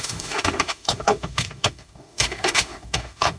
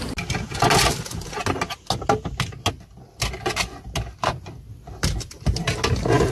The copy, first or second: first